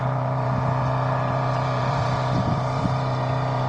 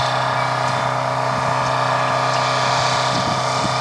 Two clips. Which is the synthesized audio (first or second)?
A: first